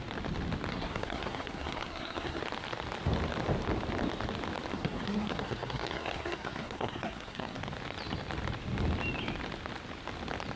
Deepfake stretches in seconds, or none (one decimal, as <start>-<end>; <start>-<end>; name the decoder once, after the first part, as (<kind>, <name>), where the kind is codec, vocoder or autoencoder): 0.7-2.4 (codec, SNAC); 4.7-7.6

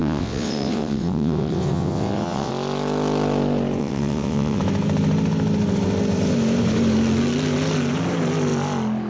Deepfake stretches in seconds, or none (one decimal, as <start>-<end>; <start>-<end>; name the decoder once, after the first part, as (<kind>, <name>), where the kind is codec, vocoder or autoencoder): 0.0-2.5 (vocoder, WaveNeXt); 3.8-4.6